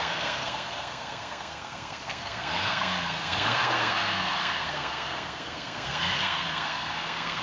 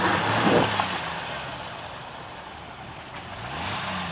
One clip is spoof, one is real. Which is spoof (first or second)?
first